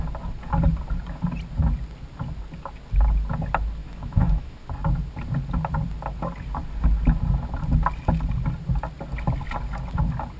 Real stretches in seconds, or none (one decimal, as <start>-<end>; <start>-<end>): 0.0-3.8; 4.6-10.4